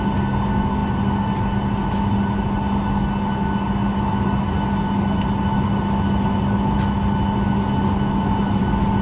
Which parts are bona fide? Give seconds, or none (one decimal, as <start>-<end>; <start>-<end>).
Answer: 0.0-9.0